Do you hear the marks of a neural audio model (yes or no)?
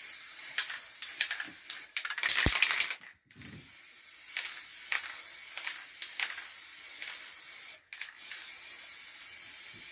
no